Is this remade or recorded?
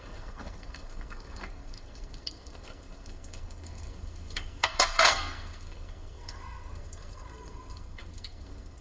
remade